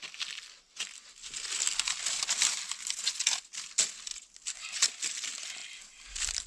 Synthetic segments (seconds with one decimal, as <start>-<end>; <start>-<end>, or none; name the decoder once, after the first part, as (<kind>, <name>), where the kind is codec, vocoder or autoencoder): 4.1-5.0 (vocoder, BigVGAN v2)